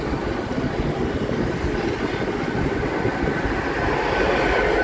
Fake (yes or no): no